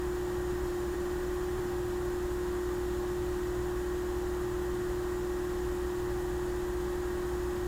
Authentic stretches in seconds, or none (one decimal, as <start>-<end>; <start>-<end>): 0.0-0.5; 1.6-7.7